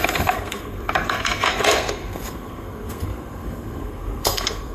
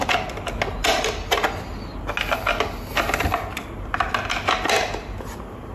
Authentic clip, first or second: second